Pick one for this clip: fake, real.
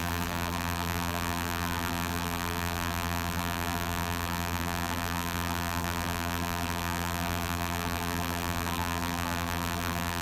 fake